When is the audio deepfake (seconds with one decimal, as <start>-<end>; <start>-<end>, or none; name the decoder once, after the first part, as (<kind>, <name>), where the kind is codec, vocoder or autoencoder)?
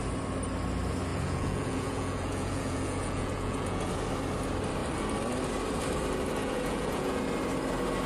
1.1-3.9 (vocoder, Vocos); 6.4-7.2